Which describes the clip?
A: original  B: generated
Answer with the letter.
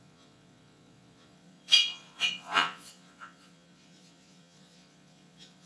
B